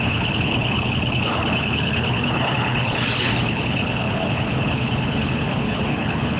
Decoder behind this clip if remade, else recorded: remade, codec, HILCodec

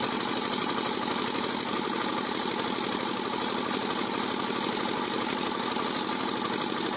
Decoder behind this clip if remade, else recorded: recorded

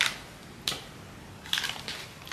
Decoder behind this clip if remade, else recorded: recorded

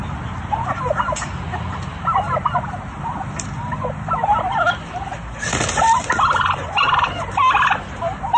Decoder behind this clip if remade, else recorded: recorded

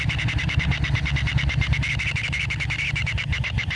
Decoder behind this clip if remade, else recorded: recorded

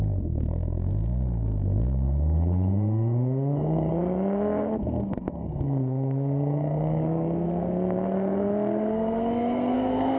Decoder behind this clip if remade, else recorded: remade, codec, SNAC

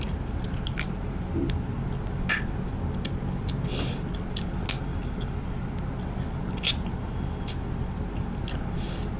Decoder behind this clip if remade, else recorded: recorded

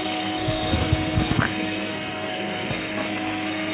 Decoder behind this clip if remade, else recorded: remade, codec, SNAC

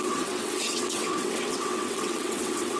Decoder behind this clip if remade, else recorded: remade, vocoder, WaveNeXt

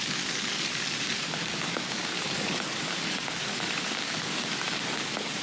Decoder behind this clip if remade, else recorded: remade, codec, DAC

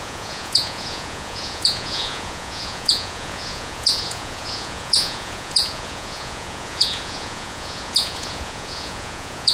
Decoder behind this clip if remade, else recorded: remade, vocoder, Vocos